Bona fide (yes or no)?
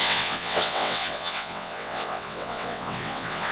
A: no